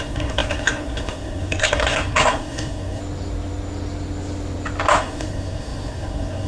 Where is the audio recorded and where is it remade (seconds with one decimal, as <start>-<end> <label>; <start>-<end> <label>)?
0.0-3.0 remade; 3.0-5.0 recorded; 5.0-6.5 remade